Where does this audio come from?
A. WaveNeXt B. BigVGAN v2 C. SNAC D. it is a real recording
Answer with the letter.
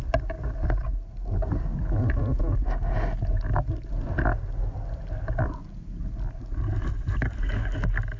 D